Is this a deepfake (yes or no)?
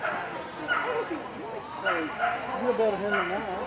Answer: no